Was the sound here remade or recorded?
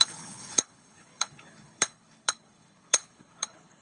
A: remade